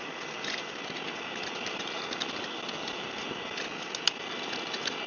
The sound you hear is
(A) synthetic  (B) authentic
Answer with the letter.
B